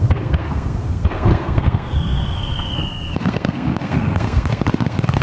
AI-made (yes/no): yes